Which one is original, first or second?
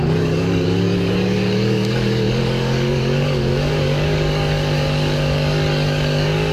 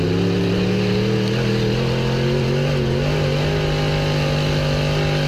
second